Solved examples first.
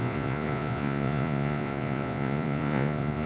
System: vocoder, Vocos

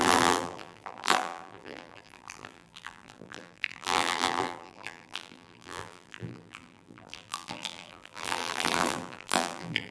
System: vocoder, BigVGAN v2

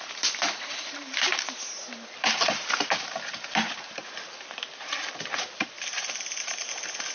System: vocoder, BigVGAN v2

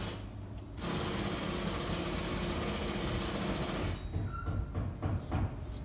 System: none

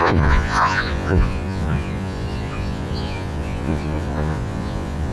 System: vocoder, Vocos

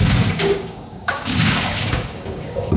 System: codec, DAC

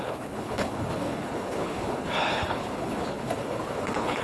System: codec, HILCodec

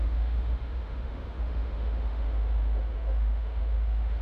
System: autoencoder, DAC-VAE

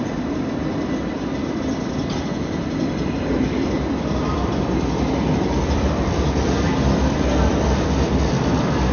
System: vocoder, BigVGAN v2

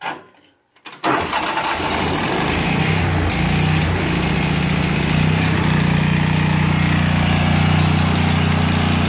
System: none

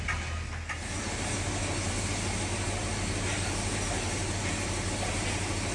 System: none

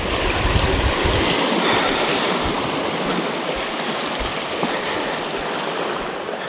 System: none